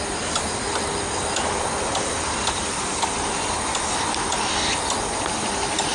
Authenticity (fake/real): real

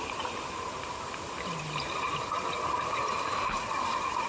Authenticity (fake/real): real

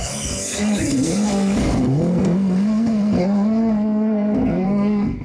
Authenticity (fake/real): fake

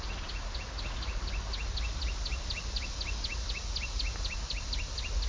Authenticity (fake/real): real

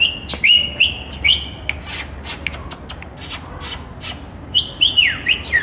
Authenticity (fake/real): real